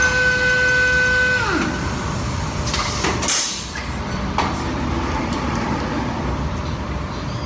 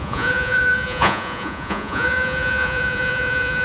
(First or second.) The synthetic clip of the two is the second